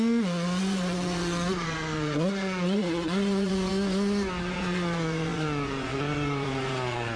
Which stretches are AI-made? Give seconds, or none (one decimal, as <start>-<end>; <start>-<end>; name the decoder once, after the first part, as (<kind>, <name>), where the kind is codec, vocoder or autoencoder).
0.0-3.7 (vocoder, Vocos); 4.4-7.2